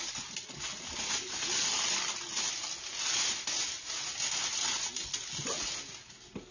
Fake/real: real